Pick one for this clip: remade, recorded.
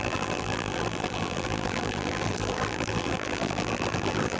remade